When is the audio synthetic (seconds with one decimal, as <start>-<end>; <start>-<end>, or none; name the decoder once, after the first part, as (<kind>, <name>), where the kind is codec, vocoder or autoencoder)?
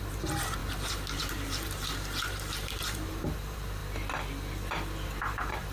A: 0.0-0.6 (vocoder, BigVGAN v2); 1.2-3.8; 5.2-5.7